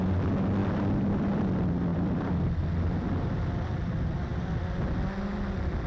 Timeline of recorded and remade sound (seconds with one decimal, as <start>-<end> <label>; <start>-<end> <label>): 0.0-0.6 recorded; 0.6-1.4 remade; 1.4-1.9 recorded; 1.9-2.6 remade; 2.6-5.9 recorded